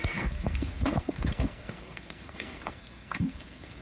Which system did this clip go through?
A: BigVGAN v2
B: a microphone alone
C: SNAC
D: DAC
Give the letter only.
C